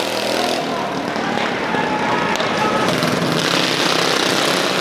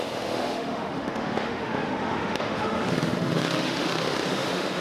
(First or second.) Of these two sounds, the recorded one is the first